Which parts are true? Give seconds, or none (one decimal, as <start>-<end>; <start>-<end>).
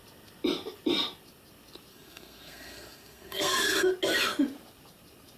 0.0-1.9; 3.9-5.4